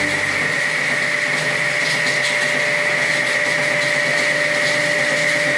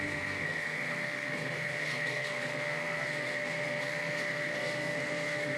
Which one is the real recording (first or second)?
first